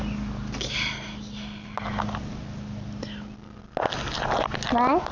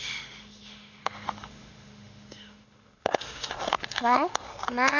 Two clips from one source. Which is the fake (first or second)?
second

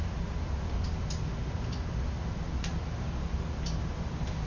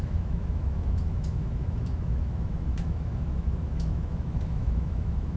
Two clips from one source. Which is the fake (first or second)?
second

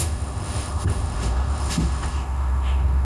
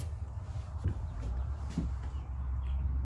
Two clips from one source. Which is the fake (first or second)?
first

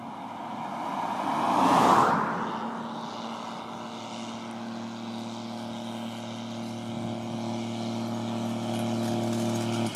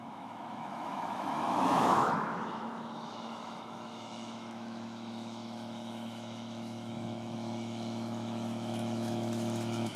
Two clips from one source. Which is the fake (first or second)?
second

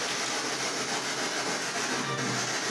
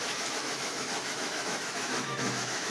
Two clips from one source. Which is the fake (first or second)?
second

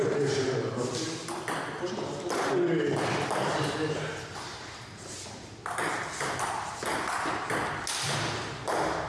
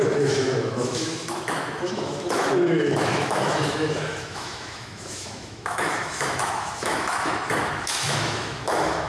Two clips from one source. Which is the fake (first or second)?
second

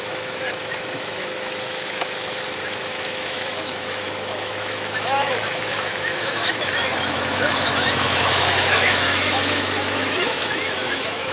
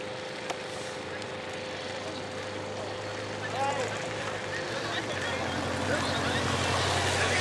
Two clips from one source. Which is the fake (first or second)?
first